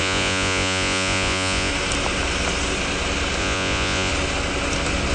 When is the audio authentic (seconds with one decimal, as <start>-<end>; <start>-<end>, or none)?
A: 1.7-3.4; 4.1-5.1